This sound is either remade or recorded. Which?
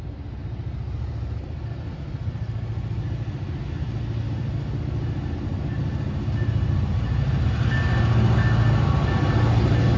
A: recorded